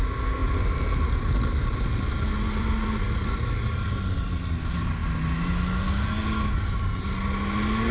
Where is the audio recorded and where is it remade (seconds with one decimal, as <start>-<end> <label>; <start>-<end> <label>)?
0.0-7.9 recorded